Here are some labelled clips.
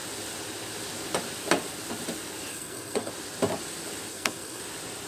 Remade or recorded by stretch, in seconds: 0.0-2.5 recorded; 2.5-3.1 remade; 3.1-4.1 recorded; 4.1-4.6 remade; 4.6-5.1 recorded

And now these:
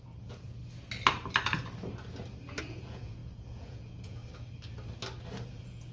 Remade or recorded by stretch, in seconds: 0.0-0.6 remade; 0.6-2.6 recorded; 2.6-4.2 remade; 4.2-5.5 recorded; 5.5-5.9 remade

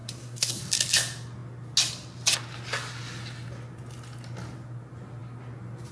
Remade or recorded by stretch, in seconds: 0.0-0.6 remade; 0.6-5.9 recorded

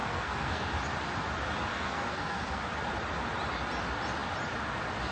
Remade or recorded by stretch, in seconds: 0.0-0.7 remade; 0.7-1.7 recorded; 1.7-2.6 remade; 2.6-5.1 recorded

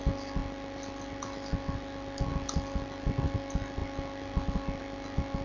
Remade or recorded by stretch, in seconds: 0.0-5.4 recorded

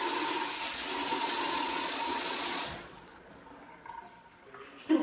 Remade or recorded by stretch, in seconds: 0.0-1.1 recorded; 1.1-3.3 remade; 3.3-5.0 recorded

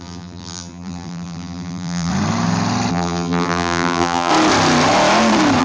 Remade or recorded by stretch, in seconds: 0.0-2.1 remade; 2.1-2.9 recorded; 2.9-4.3 remade; 4.3-5.6 recorded